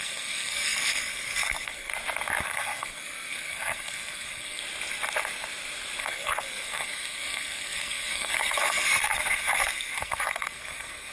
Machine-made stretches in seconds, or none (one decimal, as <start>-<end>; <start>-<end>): 0.0-1.9; 2.4-4.6; 6.0-11.1